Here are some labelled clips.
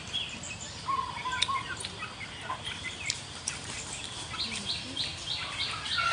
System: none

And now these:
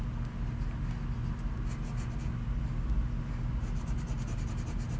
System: none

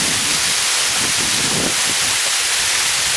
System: none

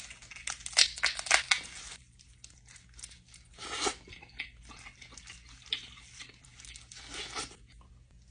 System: none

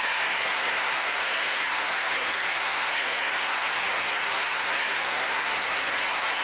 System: codec, SNAC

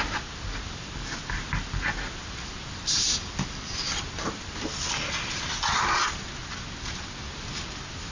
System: none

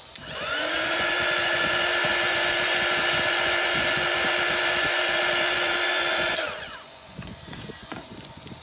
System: vocoder, Vocos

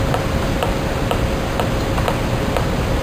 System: none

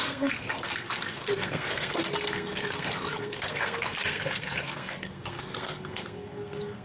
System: codec, SNAC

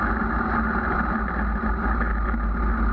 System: none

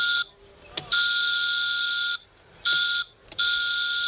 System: none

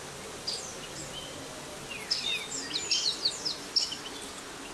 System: none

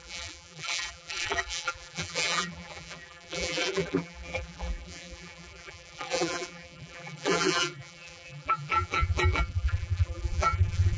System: vocoder, BigVGAN v2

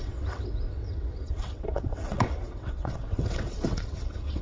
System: vocoder, WaveNeXt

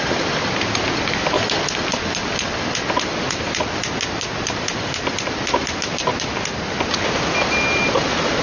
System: none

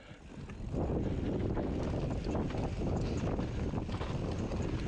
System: none